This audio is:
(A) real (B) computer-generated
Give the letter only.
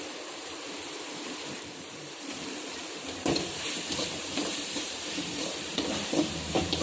B